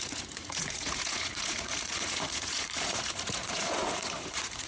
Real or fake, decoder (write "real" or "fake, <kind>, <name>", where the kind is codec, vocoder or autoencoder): fake, vocoder, Vocos